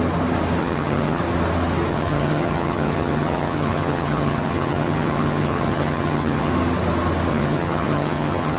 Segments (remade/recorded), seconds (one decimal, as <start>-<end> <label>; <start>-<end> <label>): 0.0-0.6 recorded; 0.6-1.2 remade; 1.2-1.9 recorded; 1.9-6.5 remade; 6.5-7.3 recorded; 7.3-8.6 remade